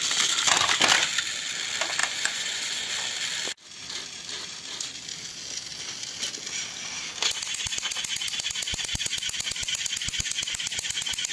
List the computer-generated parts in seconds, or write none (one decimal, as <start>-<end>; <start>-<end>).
2.0-2.9